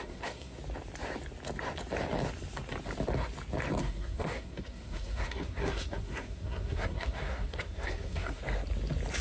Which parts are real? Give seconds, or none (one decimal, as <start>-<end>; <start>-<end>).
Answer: 0.6-3.8; 8.4-9.2